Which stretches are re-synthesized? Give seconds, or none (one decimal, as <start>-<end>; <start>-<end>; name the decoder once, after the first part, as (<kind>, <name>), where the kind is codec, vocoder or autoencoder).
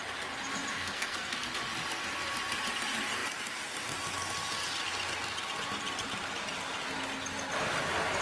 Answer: 0.7-1.5 (codec, SNAC)